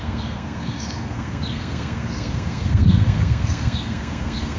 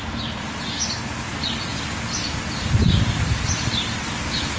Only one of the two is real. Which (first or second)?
second